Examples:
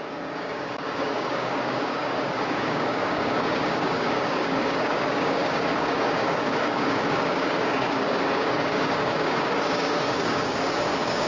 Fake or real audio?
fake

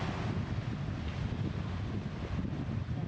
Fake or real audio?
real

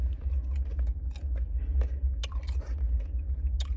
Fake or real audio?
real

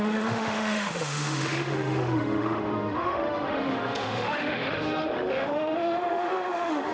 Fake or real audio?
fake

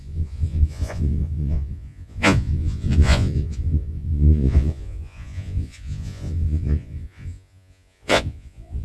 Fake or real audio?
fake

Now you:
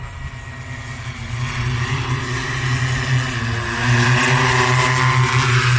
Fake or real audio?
real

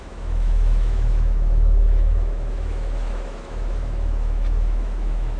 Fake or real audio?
fake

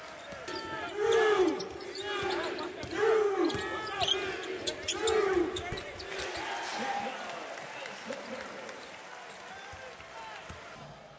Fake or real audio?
real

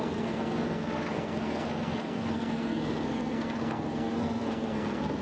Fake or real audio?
fake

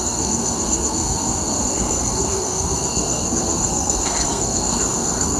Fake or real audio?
fake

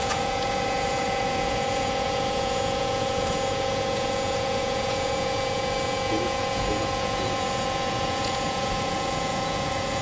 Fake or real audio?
fake